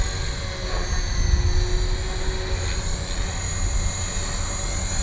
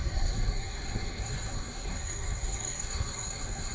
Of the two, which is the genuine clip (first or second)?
first